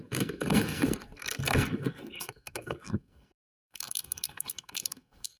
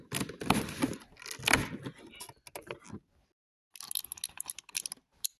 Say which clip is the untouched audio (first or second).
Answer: second